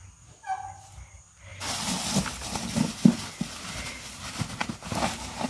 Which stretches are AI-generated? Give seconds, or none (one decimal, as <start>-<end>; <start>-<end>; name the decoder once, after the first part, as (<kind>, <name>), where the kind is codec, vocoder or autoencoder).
none